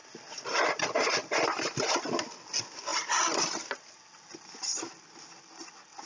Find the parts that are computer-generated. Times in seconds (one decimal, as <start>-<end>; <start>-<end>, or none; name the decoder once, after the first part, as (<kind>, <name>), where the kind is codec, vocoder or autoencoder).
none